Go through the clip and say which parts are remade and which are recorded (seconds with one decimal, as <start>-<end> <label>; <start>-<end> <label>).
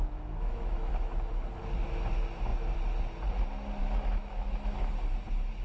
0.0-1.3 remade; 1.3-3.8 recorded; 3.8-4.9 remade; 4.9-5.6 recorded